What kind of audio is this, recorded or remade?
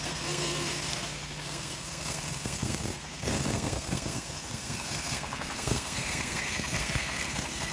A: remade